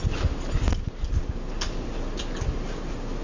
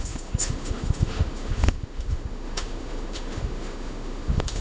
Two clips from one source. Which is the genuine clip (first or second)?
first